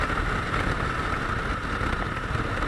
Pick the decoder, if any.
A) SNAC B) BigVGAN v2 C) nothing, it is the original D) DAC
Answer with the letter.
C